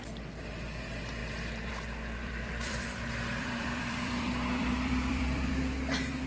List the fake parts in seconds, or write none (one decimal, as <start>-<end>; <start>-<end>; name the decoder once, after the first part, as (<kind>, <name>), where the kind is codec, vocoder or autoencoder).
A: 2.2-5.5 (vocoder, BigVGAN v2)